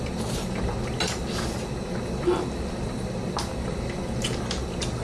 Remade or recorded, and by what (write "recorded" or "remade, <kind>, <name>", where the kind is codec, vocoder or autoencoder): recorded